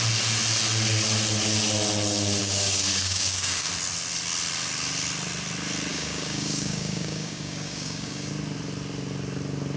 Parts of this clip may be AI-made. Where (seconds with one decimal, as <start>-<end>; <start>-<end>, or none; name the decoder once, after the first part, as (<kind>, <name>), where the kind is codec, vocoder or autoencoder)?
2.4-3.7 (codec, DAC); 5.9-8.3